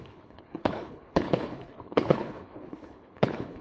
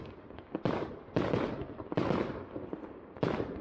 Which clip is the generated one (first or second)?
first